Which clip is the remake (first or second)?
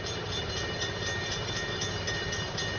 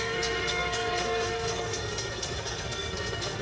second